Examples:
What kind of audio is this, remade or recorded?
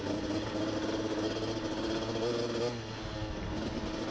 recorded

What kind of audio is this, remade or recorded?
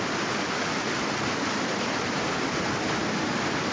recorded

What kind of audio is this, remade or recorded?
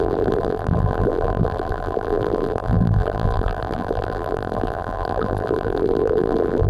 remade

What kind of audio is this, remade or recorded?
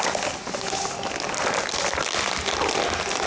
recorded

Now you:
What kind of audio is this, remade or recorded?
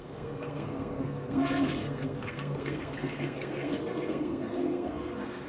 remade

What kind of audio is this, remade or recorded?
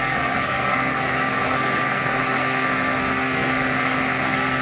remade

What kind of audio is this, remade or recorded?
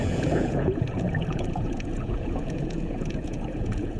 remade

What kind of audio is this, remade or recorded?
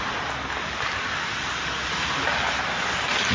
remade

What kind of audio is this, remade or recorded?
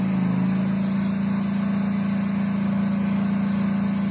recorded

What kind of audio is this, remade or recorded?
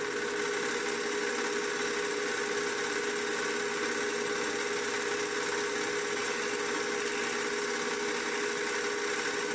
recorded